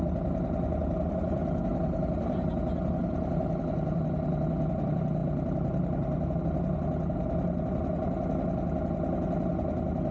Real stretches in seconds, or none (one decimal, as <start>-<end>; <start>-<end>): 0.0-1.7; 2.5-3.0; 3.6-5.2; 6.4-10.1